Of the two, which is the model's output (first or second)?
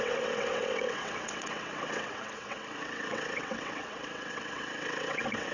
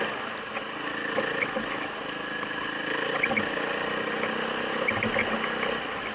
first